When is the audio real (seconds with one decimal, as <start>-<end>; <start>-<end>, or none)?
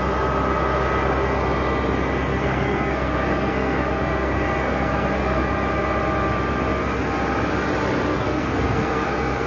0.0-2.3; 5.5-8.1